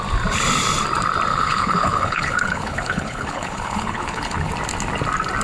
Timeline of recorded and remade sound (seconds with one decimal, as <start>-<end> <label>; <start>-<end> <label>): 0.0-1.3 recorded; 1.3-4.5 remade; 4.5-5.4 recorded